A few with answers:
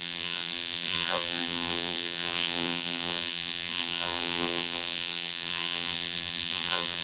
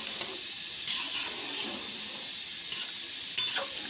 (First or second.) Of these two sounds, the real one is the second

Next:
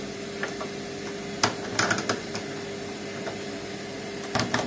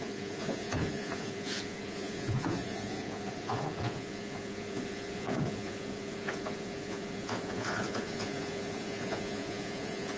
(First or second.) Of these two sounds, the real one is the first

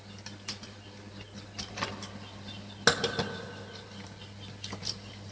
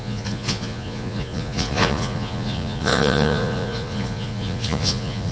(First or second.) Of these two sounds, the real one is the first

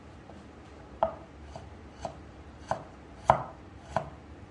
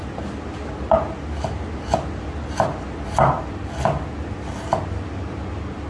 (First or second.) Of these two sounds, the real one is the second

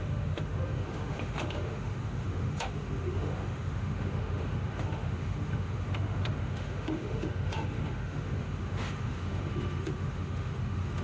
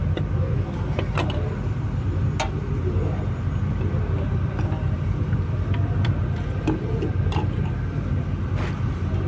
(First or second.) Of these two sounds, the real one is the second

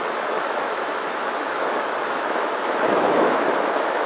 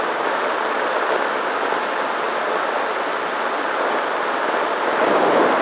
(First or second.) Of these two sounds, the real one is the second